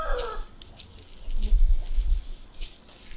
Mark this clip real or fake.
real